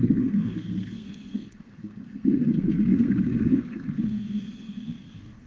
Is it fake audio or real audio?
fake